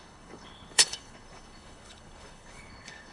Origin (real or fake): fake